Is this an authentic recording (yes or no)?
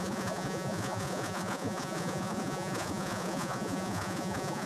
no